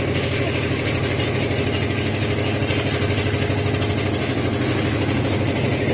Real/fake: real